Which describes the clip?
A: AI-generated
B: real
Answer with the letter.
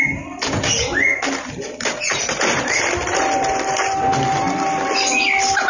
B